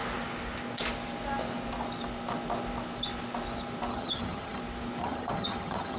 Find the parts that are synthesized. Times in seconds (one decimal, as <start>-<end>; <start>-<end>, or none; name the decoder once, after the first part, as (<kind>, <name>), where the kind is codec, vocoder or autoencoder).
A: 3.9-4.6 (vocoder, HiFi-GAN); 5.0-6.0